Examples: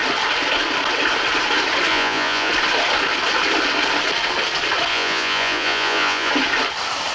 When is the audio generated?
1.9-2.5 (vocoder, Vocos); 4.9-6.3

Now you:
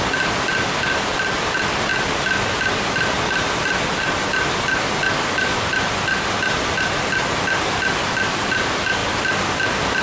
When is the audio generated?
none